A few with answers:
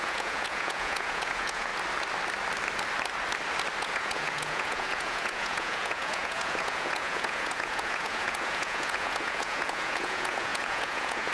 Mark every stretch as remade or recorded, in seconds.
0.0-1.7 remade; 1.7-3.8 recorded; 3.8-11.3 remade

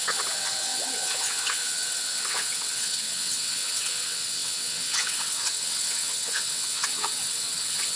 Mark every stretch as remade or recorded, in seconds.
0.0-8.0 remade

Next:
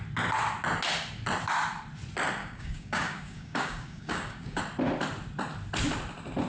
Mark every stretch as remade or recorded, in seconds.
0.0-2.4 recorded; 2.4-4.6 remade; 4.6-6.5 recorded

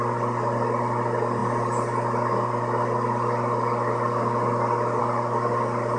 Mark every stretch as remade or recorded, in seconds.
0.0-6.0 recorded

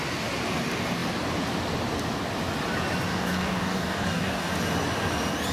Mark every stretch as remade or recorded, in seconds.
0.0-3.1 recorded; 3.1-4.5 remade; 4.5-5.5 recorded

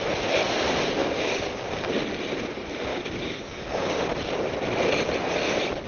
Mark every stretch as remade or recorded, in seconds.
0.0-1.0 recorded; 1.0-1.8 remade; 1.8-2.9 recorded; 2.9-4.1 remade; 4.1-5.9 recorded

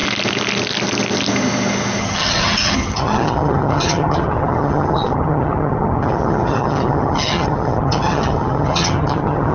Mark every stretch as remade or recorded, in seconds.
0.0-2.0 recorded; 2.0-9.5 remade

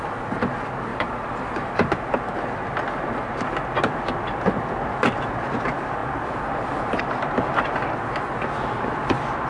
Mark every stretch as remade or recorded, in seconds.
0.0-0.9 recorded; 0.9-1.9 remade; 1.9-6.0 recorded; 6.0-7.0 remade; 7.0-9.5 recorded